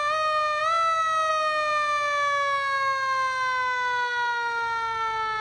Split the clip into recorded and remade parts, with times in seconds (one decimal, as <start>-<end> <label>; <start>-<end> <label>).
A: 0.0-5.4 recorded